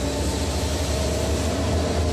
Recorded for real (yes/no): yes